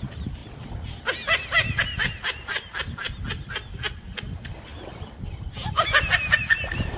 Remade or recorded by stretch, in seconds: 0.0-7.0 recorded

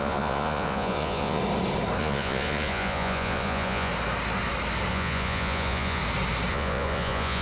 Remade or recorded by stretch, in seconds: 0.0-1.4 remade; 1.4-2.0 recorded; 2.0-3.9 remade; 3.9-4.9 recorded; 4.9-6.0 remade; 6.0-6.5 recorded; 6.5-7.4 remade

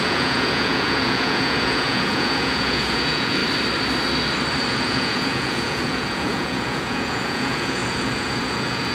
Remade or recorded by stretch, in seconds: 0.0-3.4 remade; 3.4-4.7 recorded; 4.7-8.9 remade